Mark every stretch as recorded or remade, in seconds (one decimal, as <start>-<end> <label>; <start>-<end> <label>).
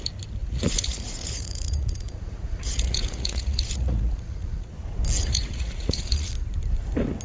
0.0-0.4 recorded; 0.4-4.7 remade; 4.7-5.2 recorded; 5.2-6.3 remade; 6.3-7.2 recorded